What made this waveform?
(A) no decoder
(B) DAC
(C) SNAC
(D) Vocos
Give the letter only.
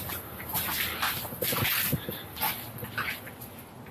A